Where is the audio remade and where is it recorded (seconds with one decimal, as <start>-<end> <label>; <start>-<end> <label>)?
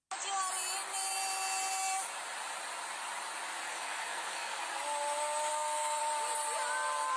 0.0-3.7 recorded; 3.7-4.6 remade; 4.6-5.5 recorded; 5.5-6.0 remade; 6.0-7.2 recorded